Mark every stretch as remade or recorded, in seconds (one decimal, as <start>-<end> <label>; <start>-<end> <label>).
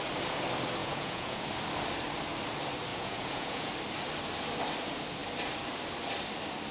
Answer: 0.0-0.8 recorded; 0.8-1.4 remade; 1.4-2.9 recorded; 2.9-3.7 remade; 3.7-6.7 recorded